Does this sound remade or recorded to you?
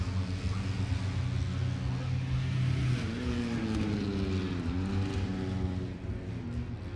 recorded